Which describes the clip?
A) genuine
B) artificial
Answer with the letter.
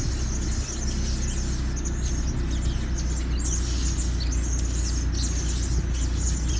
A